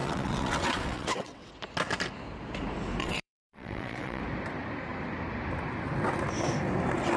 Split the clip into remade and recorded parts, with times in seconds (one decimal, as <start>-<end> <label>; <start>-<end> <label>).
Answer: 0.0-1.5 remade; 1.5-3.0 recorded; 3.0-4.2 remade; 4.2-7.2 recorded